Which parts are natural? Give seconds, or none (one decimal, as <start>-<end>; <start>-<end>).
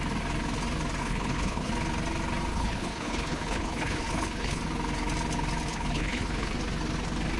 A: 0.0-1.0; 1.7-2.5; 4.6-5.7; 6.5-7.4